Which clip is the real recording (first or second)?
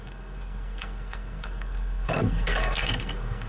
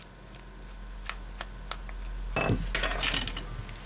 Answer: second